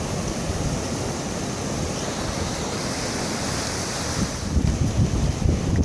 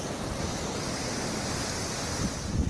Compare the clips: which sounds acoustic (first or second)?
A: second